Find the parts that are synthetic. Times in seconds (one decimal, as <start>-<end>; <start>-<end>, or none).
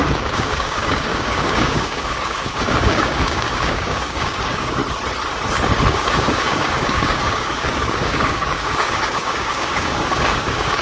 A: 0.0-4.8; 5.9-10.8